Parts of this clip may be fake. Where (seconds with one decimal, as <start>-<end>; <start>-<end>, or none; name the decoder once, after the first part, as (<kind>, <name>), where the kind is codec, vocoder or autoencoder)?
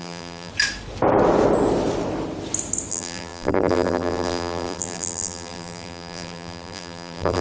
0.0-0.5 (vocoder, BigVGAN v2); 2.9-7.4